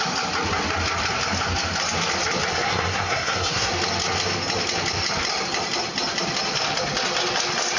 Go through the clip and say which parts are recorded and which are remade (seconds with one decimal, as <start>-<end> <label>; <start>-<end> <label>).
0.0-2.5 recorded; 2.5-3.7 remade; 3.7-7.8 recorded